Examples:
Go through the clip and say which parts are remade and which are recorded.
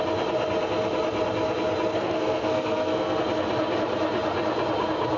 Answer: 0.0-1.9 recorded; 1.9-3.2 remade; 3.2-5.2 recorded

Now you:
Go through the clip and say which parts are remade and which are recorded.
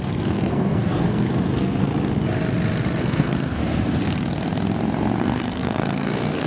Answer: 0.0-1.8 remade; 1.8-3.0 recorded; 3.0-3.6 remade; 3.6-5.2 recorded; 5.2-6.5 remade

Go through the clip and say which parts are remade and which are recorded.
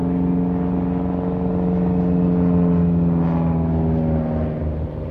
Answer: 0.0-5.1 recorded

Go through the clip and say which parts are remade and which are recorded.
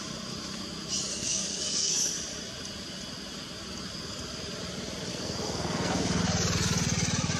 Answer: 0.0-1.1 recorded; 1.1-2.1 remade; 2.1-5.1 recorded; 5.1-6.2 remade; 6.2-7.4 recorded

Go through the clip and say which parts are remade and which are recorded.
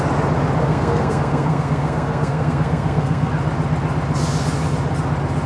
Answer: 0.0-0.6 recorded; 0.6-3.3 remade; 3.3-5.5 recorded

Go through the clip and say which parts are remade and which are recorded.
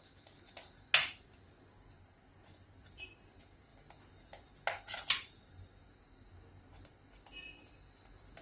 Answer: 0.0-8.4 recorded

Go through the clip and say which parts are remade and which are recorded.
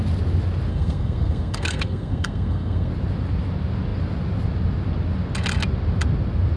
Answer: 0.0-0.7 recorded; 0.7-2.9 remade; 2.9-6.6 recorded